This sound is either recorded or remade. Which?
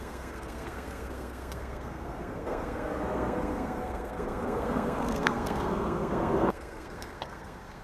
remade